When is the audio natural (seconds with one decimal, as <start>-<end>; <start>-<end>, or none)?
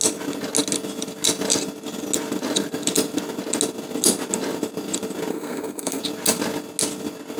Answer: 0.0-5.3; 6.0-7.4